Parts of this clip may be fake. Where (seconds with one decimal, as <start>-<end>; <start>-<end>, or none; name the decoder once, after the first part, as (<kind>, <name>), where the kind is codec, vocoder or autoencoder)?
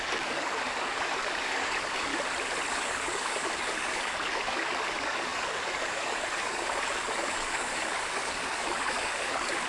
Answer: 0.0-2.1 (codec, DAC); 2.7-9.7